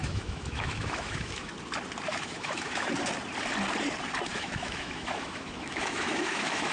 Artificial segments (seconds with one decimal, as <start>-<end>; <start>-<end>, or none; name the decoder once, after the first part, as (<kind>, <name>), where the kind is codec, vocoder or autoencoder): 0.0-1.5 (autoencoder, DAC-VAE); 2.1-2.9; 4.3-6.7